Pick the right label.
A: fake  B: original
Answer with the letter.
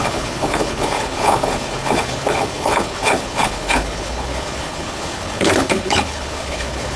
A